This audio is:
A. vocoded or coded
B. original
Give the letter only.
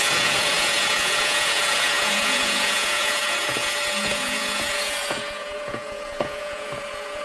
A